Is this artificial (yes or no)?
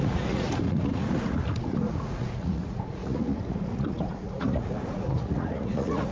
yes